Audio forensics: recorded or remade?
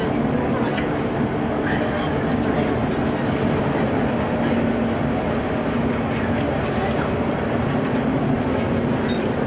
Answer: recorded